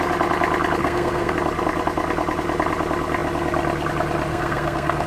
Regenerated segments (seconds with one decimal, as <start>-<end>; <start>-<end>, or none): 0.8-1.3; 4.3-5.1